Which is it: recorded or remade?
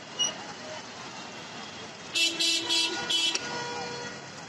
recorded